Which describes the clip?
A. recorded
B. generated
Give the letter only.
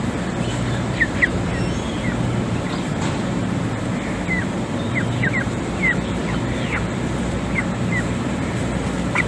B